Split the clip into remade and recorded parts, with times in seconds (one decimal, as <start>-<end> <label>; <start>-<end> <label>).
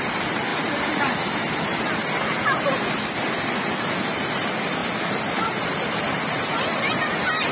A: 0.0-0.5 remade; 0.5-1.5 recorded; 1.5-4.8 remade; 4.8-5.6 recorded; 5.6-7.5 remade